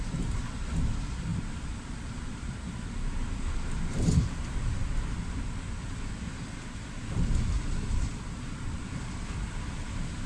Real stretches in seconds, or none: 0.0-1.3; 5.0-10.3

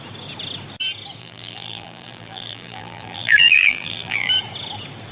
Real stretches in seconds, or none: 0.0-1.2; 4.3-5.1

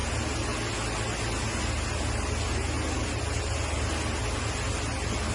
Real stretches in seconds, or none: 0.0-5.3

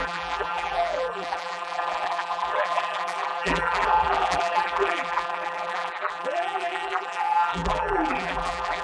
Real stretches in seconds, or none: none

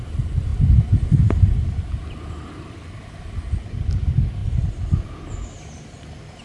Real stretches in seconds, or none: 0.0-6.4

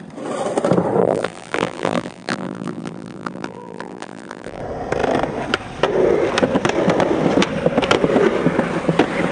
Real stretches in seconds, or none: 0.0-1.0; 4.6-9.3